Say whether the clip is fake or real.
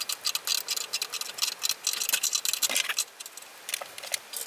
real